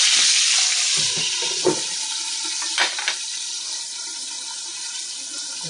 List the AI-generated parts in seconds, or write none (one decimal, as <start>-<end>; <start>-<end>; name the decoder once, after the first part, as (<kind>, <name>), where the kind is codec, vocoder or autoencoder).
0.0-4.1 (vocoder, BigVGAN v2); 4.8-5.7